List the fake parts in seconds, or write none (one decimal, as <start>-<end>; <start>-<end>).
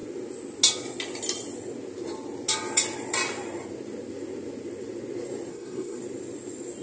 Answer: 5.5-6.0